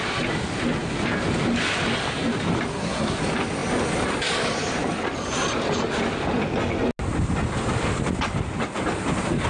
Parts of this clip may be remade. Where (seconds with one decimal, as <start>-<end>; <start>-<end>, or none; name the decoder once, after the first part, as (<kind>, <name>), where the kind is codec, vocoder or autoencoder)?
2.7-3.2 (codec, SNAC)